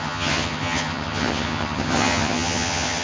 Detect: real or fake fake